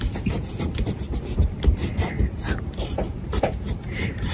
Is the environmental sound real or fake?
fake